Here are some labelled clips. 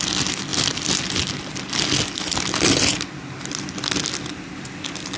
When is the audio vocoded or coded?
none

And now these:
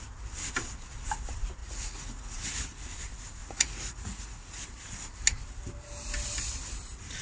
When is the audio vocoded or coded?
1.6-2.5 (vocoder, Vocos); 3.4-4.6

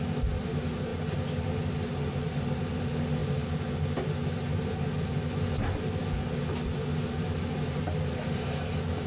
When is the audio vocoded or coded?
none

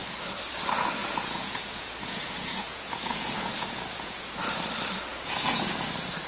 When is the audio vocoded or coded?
1.0-4.3 (vocoder, Vocos); 5.1-5.7

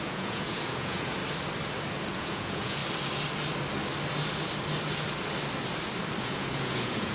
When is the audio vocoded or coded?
0.0-1.2 (vocoder, Vocos); 2.1-2.8; 6.2-7.1